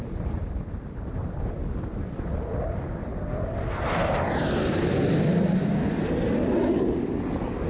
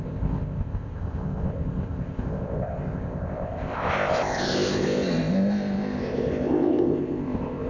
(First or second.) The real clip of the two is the first